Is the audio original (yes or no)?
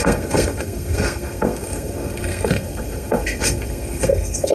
no